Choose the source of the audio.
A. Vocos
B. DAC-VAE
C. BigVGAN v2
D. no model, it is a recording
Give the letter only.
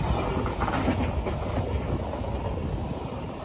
D